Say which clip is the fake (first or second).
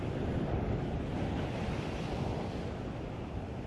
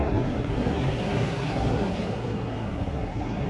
second